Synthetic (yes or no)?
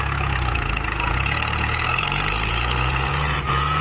yes